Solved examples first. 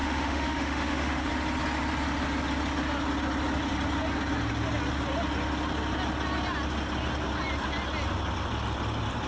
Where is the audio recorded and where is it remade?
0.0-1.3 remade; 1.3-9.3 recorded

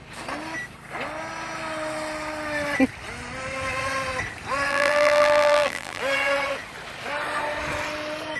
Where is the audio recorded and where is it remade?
0.0-4.7 recorded; 4.7-6.0 remade; 6.0-8.4 recorded

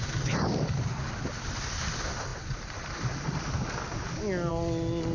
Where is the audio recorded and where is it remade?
0.0-5.1 recorded

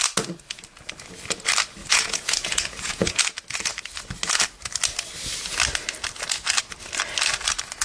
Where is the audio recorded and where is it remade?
0.0-1.8 recorded; 1.8-3.2 remade; 3.2-7.8 recorded

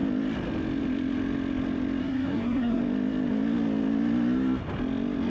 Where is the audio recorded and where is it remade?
0.0-2.0 recorded; 2.0-2.8 remade; 2.8-5.3 recorded

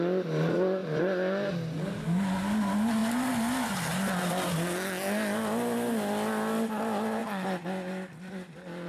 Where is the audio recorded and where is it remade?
0.0-0.8 recorded; 0.8-1.5 remade; 1.5-7.2 recorded; 7.2-8.9 remade

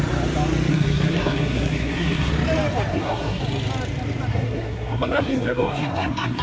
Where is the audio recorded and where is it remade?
0.0-0.7 recorded; 0.7-2.3 remade; 2.3-2.9 recorded; 2.9-3.4 remade; 3.4-4.3 recorded; 4.3-6.4 remade